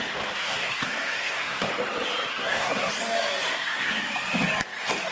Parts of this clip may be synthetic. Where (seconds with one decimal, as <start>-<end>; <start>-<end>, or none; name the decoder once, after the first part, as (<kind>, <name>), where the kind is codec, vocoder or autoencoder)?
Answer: 0.6-1.7 (codec, SNAC); 2.3-2.9; 3.5-4.0